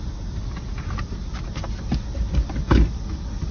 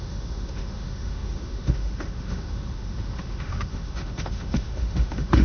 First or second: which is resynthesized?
second